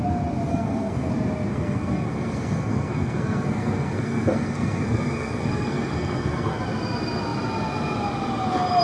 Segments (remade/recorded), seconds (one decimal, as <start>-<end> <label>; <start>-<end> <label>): 0.0-0.5 recorded; 0.5-1.1 remade; 1.1-1.5 recorded; 1.5-6.6 remade; 6.6-8.8 recorded